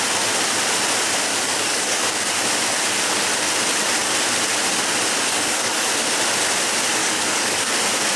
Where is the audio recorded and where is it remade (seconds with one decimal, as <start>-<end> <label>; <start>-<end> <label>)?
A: 0.0-1.3 recorded; 1.3-2.4 remade; 2.4-5.3 recorded; 5.3-5.9 remade; 5.9-7.0 recorded; 7.0-7.7 remade; 7.7-8.2 recorded